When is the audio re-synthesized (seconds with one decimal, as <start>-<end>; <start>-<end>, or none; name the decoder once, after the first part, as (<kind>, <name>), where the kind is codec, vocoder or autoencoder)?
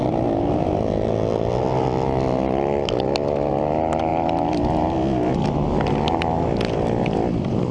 none